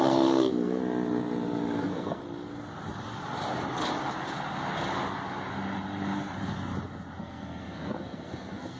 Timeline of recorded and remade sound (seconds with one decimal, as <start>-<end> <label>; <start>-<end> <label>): 0.0-0.8 remade; 0.8-1.8 recorded; 1.8-2.2 remade; 2.2-7.2 recorded; 7.2-8.8 remade